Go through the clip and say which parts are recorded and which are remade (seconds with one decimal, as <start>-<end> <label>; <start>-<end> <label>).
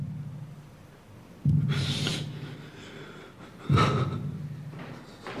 0.0-5.4 recorded